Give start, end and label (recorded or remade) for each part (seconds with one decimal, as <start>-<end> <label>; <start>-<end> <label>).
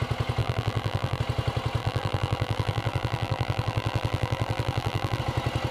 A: 0.0-0.4 recorded; 0.4-1.2 remade; 1.2-1.8 recorded; 1.8-5.2 remade; 5.2-5.7 recorded